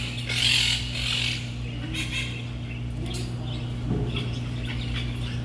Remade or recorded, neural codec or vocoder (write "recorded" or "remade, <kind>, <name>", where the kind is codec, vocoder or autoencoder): recorded